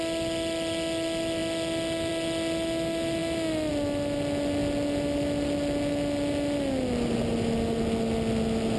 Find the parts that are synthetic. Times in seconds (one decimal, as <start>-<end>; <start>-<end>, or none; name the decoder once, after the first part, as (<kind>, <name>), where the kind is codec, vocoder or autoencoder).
none